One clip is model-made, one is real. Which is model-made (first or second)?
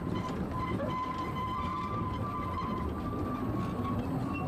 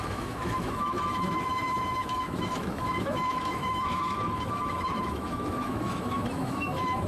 second